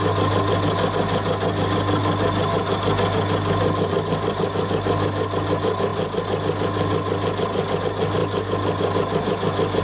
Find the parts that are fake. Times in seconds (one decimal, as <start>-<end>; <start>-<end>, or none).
none